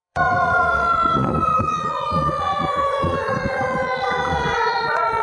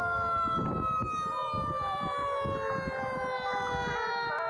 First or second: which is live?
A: second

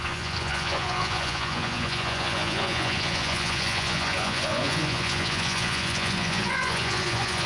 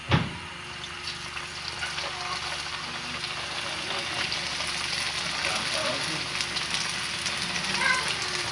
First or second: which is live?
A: second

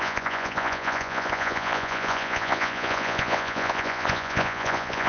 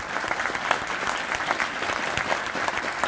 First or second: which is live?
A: second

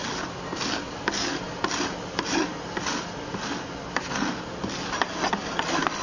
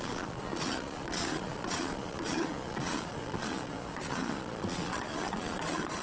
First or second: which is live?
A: first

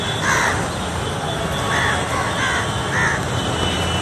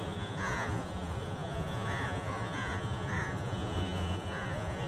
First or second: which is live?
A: first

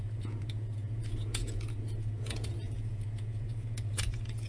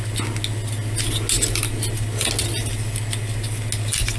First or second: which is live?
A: second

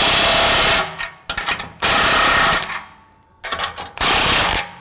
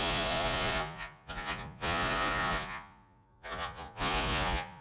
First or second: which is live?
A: first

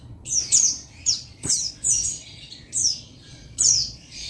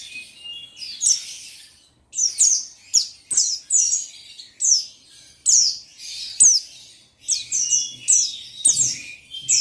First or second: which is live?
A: second